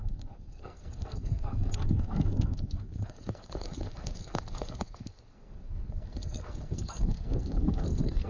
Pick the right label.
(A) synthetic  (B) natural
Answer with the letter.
A